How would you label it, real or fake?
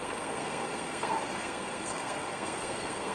fake